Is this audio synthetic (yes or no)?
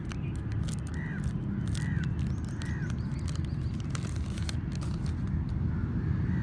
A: no